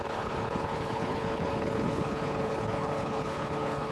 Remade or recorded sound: remade